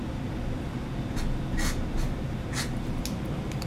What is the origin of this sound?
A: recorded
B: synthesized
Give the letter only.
A